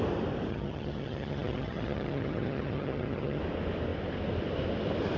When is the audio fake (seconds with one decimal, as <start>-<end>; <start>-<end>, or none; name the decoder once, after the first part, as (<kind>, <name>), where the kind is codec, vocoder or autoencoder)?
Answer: 0.5-3.4 (vocoder, HiFi-GAN)